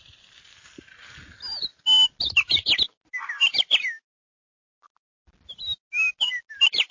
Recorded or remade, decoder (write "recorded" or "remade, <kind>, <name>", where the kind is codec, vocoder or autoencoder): recorded